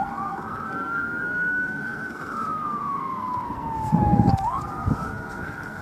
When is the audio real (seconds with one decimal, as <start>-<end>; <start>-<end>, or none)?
none